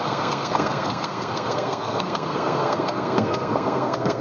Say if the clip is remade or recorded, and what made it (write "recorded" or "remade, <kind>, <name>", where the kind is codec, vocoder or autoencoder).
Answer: remade, codec, SNAC